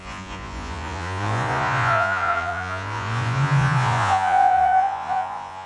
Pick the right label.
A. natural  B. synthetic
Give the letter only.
B